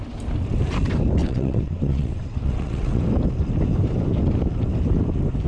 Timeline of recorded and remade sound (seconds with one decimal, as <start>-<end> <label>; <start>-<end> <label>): 0.0-1.2 recorded; 1.2-3.0 remade; 3.0-5.5 recorded